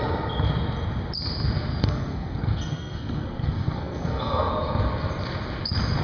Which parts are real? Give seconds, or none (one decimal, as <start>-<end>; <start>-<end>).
0.0-1.7; 4.5-6.0